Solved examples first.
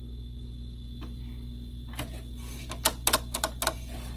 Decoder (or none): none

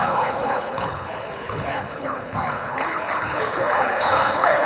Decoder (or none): codec, HILCodec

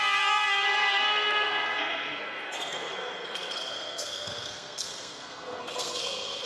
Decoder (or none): codec, SNAC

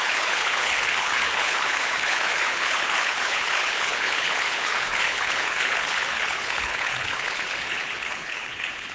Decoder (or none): codec, HILCodec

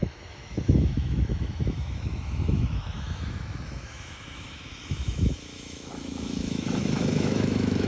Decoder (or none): autoencoder, DAC-VAE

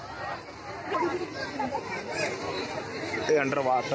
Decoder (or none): none